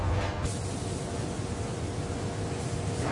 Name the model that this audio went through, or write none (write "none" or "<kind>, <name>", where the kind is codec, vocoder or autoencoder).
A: none